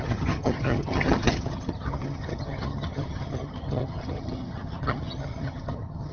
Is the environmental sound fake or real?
fake